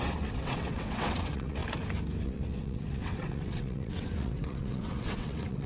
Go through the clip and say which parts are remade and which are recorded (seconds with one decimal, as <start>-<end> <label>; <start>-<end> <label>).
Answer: 0.0-1.6 remade; 1.6-2.2 recorded; 2.2-5.7 remade

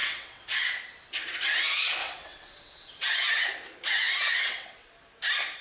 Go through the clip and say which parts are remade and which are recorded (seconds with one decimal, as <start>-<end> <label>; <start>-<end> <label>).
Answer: 0.0-0.6 remade; 0.6-2.0 recorded; 2.0-3.1 remade; 3.1-4.3 recorded; 4.3-4.9 remade; 4.9-5.6 recorded

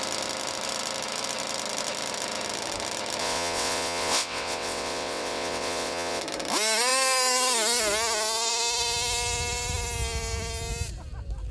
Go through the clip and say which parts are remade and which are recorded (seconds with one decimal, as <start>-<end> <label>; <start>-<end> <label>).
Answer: 0.0-3.2 recorded; 3.2-6.2 remade; 6.2-11.5 recorded

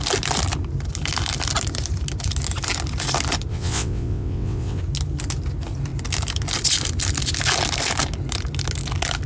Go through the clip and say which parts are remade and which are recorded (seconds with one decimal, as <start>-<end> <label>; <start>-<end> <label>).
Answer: 0.0-3.5 recorded; 3.5-4.8 remade; 4.8-9.3 recorded

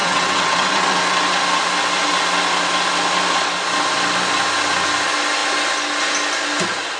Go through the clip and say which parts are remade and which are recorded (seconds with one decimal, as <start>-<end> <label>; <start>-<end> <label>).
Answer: 0.0-1.0 remade; 1.0-7.0 recorded